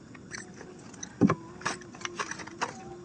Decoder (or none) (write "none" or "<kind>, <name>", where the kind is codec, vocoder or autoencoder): none